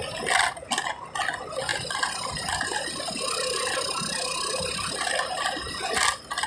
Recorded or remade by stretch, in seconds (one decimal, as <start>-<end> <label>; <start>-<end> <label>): 0.0-6.5 recorded

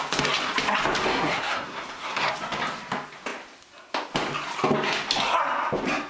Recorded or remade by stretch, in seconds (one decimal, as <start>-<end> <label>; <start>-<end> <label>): 0.0-1.1 recorded; 1.1-2.3 remade; 2.3-6.1 recorded